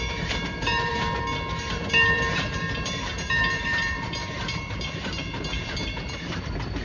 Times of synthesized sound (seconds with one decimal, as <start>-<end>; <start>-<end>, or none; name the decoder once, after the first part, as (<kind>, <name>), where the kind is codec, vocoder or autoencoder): 0.0-0.9 (vocoder, BigVGAN v2); 1.7-6.8

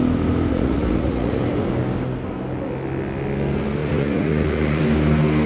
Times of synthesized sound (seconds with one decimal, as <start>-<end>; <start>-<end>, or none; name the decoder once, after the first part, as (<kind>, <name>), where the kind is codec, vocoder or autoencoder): 0.5-1.4 (vocoder, Vocos); 3.8-4.8